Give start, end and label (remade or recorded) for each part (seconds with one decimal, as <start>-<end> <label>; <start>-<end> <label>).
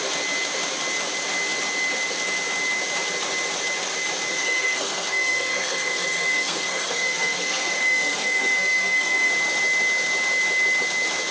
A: 0.0-4.3 recorded; 4.3-9.3 remade; 9.3-11.3 recorded